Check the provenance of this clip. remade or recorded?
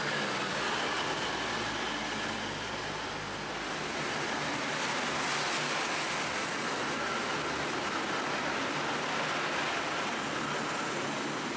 recorded